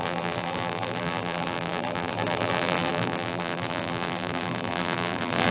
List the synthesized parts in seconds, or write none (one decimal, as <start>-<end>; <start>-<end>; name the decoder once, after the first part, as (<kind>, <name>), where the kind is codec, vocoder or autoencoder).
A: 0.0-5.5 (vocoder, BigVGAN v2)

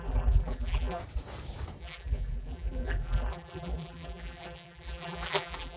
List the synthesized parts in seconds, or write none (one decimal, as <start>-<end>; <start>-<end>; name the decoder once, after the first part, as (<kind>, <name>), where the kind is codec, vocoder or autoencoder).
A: 0.0-1.0 (vocoder, BigVGAN v2); 1.8-5.8

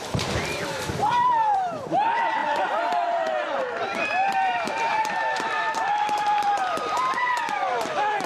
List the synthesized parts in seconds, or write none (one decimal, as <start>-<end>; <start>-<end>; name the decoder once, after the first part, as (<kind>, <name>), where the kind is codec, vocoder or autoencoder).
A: 0.0-8.3 (vocoder, BigVGAN v2)

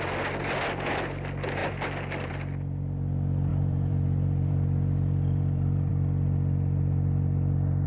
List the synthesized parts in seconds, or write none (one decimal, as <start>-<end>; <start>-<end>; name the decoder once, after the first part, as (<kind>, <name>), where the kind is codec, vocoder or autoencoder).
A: 1.6-2.3 (vocoder, BigVGAN v2); 3.5-5.9